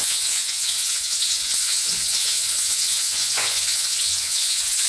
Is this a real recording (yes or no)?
no